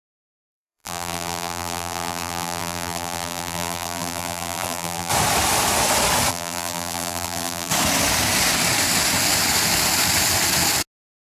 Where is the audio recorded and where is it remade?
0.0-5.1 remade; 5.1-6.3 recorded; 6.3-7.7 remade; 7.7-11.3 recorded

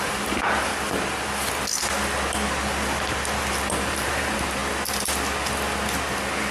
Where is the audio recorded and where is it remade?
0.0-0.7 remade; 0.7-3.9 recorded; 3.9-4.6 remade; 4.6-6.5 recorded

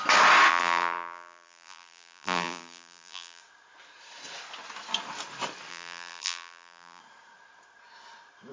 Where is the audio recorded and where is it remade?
0.0-0.5 recorded; 0.5-3.4 remade; 3.4-5.7 recorded; 5.7-7.0 remade; 7.0-8.5 recorded

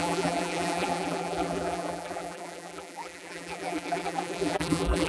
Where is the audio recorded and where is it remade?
0.0-5.1 remade

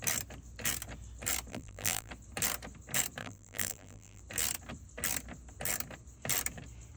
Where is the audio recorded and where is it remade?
0.0-1.5 recorded; 1.5-2.1 remade; 2.1-3.2 recorded; 3.2-4.2 remade; 4.2-7.0 recorded

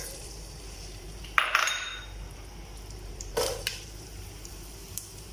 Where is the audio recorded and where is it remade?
0.0-1.9 remade; 1.9-2.9 recorded; 2.9-5.3 remade

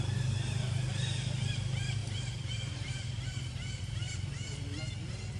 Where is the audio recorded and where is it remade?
0.0-5.4 remade